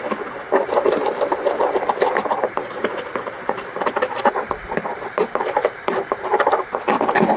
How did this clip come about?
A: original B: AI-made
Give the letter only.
B